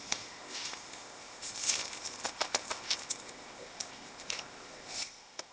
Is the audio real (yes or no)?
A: no